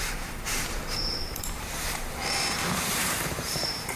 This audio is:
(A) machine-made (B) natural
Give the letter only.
A